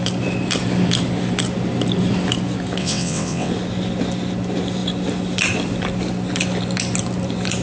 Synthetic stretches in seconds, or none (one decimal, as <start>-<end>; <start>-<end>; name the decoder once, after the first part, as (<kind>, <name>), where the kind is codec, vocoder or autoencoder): 2.8-3.5 (vocoder, WaveNeXt)